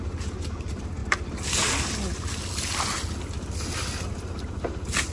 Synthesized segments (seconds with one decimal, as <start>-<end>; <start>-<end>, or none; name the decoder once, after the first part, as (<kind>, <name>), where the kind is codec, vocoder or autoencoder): none